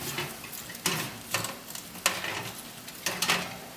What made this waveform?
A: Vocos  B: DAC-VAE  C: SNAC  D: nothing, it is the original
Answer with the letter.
D